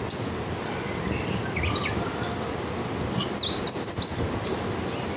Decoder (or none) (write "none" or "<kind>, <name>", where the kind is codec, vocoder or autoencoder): none